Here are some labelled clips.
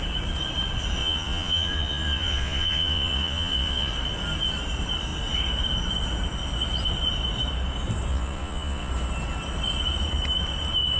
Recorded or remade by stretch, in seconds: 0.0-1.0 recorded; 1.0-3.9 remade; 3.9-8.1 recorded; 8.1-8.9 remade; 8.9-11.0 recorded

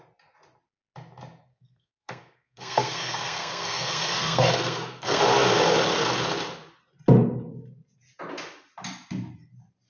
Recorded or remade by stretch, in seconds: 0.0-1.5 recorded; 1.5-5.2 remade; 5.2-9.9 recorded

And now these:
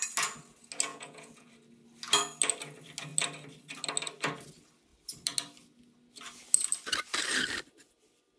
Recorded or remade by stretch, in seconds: 0.0-0.9 recorded; 0.9-1.5 remade; 1.5-8.4 recorded